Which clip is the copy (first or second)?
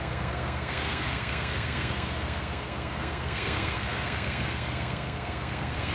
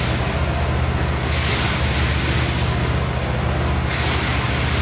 first